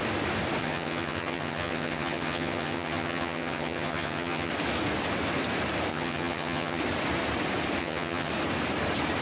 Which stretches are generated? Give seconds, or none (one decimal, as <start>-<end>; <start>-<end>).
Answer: 0.6-4.5; 5.9-6.8; 7.8-8.3